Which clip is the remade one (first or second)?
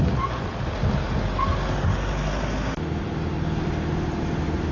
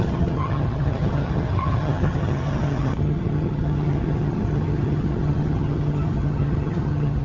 second